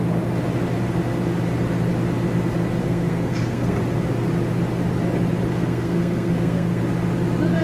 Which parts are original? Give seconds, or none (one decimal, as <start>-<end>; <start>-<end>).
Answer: 0.0-2.8; 3.8-5.5; 6.8-7.6

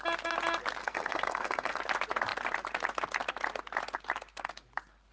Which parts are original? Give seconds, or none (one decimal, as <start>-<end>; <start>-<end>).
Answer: 0.0-0.8; 1.8-5.1

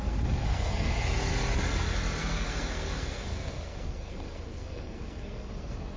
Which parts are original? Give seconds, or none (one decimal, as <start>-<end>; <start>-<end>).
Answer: 1.3-2.2

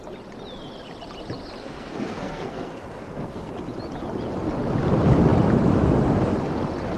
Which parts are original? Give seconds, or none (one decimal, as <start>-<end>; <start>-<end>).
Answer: 0.0-1.6; 3.5-7.0

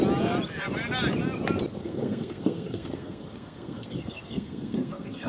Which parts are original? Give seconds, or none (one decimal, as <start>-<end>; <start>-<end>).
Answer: 0.0-1.8

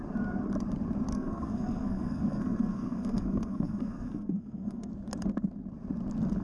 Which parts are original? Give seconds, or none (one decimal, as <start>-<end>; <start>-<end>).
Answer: 0.0-1.1; 4.9-6.4

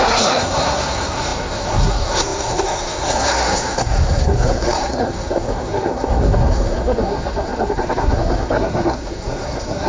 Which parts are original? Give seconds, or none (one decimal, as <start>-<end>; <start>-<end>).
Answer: none